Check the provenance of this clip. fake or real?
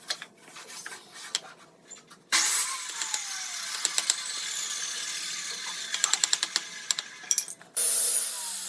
real